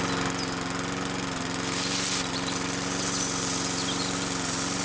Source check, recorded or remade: recorded